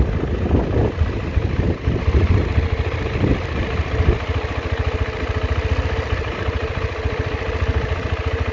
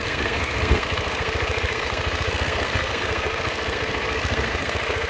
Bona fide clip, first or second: first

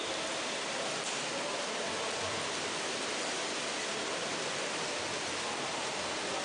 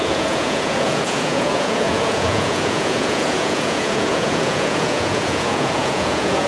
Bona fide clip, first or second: first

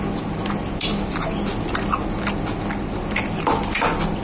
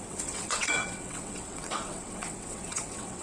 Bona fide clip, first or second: first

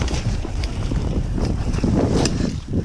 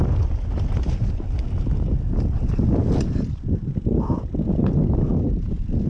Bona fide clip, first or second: second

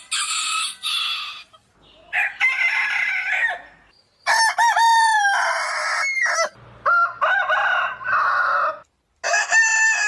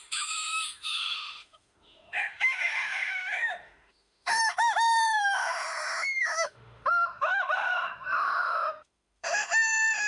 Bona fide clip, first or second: first